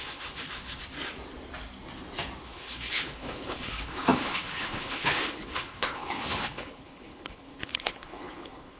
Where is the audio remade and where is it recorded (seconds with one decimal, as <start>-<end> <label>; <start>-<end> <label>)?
0.0-0.8 remade; 0.8-2.4 recorded; 2.4-8.8 remade